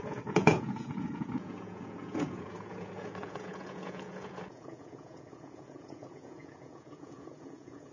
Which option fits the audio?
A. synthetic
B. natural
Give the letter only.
A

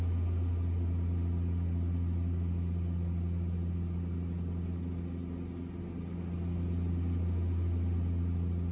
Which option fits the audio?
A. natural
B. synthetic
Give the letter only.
A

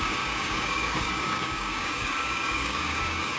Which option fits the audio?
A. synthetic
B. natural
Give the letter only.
A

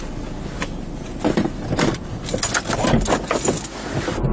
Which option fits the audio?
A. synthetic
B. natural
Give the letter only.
B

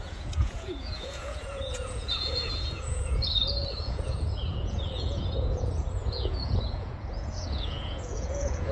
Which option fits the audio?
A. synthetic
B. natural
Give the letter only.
A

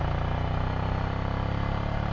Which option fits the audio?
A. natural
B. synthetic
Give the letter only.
A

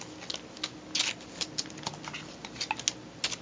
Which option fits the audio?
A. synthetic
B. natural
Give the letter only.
B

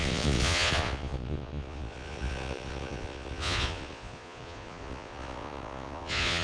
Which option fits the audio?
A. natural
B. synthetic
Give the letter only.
B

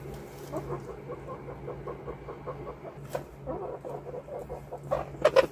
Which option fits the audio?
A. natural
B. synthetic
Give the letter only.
A